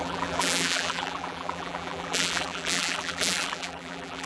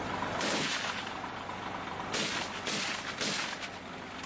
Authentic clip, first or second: second